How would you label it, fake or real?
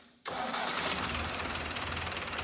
fake